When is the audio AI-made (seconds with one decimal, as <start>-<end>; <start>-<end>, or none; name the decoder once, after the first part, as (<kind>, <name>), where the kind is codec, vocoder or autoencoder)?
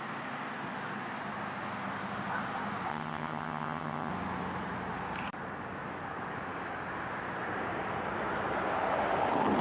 2.9-4.1 (vocoder, HiFi-GAN)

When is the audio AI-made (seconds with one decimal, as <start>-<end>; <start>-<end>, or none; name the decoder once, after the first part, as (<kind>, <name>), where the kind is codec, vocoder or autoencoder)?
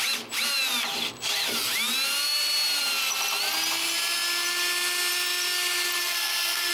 6.0-6.7 (codec, SNAC)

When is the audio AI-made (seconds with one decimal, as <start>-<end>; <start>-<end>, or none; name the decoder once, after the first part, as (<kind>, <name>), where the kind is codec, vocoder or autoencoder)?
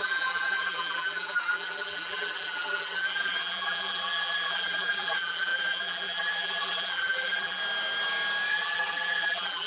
0.0-7.6 (vocoder, BigVGAN v2); 8.5-9.7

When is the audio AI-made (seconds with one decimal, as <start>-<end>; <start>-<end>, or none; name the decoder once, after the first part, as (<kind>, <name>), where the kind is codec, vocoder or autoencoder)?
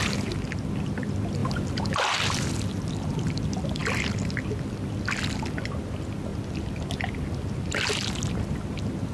none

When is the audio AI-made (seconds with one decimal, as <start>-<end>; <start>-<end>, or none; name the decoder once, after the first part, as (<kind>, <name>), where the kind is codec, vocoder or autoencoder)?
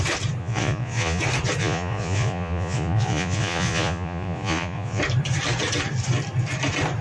0.4-1.2 (vocoder, Vocos); 1.6-5.0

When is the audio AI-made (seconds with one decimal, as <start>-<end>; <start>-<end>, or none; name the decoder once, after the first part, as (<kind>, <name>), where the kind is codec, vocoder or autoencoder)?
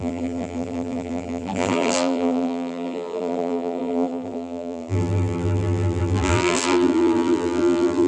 0.0-8.1 (vocoder, BigVGAN v2)